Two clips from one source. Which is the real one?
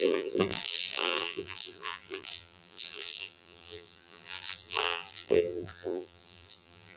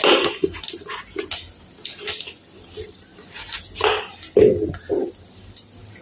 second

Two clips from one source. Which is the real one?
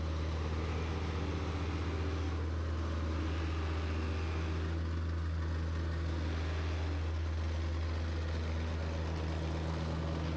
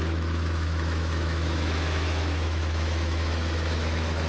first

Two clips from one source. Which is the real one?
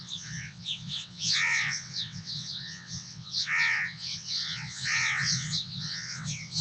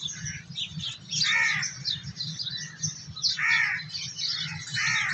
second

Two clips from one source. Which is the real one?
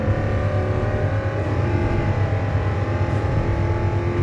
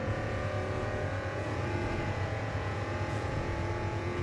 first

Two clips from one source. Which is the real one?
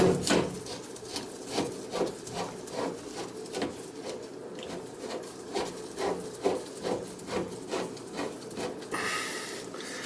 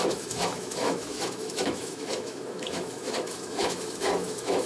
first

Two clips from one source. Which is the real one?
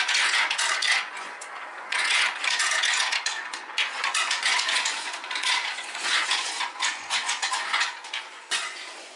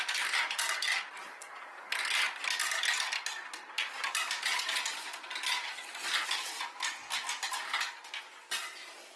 second